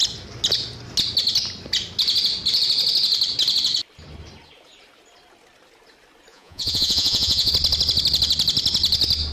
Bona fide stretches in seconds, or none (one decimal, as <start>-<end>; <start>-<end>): 0.0-6.3; 7.5-9.3

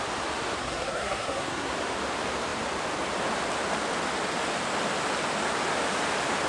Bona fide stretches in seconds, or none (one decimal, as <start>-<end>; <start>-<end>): 0.0-0.6; 1.7-6.5